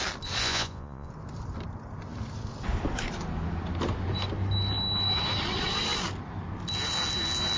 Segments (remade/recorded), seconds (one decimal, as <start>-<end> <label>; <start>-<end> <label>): 0.0-0.4 recorded; 0.4-1.1 remade; 1.1-7.6 recorded